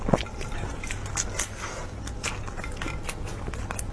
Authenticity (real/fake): real